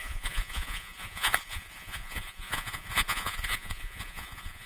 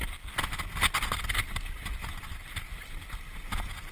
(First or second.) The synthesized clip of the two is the first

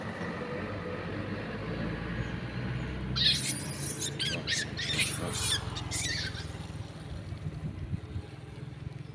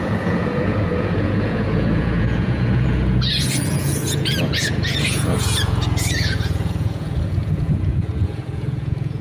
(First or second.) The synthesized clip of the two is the second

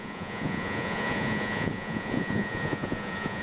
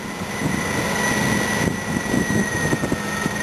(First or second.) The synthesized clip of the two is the first